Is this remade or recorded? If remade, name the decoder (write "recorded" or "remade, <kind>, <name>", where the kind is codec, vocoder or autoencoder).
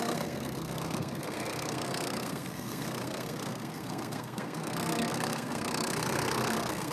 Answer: remade, codec, SNAC